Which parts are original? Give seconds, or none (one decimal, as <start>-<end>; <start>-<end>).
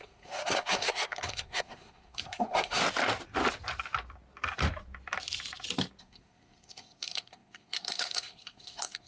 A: 2.8-6.0